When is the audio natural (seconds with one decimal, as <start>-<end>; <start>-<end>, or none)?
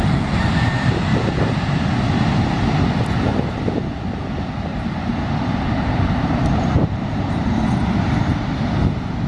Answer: 0.0-1.1; 2.6-4.7; 7.6-9.3